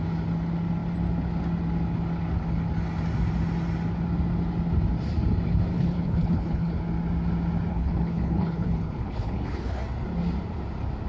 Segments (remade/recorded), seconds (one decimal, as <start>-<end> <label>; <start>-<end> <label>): 0.0-5.7 recorded; 5.7-6.8 remade; 6.8-7.7 recorded; 7.7-9.8 remade; 9.8-11.1 recorded

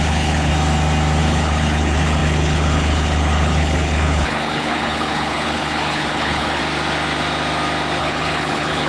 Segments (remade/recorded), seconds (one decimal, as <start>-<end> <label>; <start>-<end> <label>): 0.0-0.5 remade; 0.5-1.2 recorded; 1.2-6.6 remade; 6.6-8.0 recorded; 8.0-8.9 remade

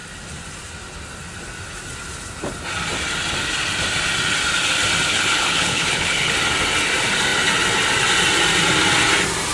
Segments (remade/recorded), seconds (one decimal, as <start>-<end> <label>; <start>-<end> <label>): 0.0-5.1 recorded; 5.1-6.3 remade; 6.3-9.5 recorded